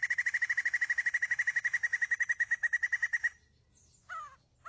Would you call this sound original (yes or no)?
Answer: yes